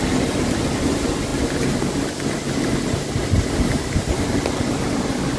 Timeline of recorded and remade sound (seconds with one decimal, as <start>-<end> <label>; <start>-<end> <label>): 0.0-5.4 recorded